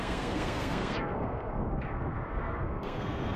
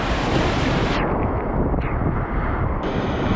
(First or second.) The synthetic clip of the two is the first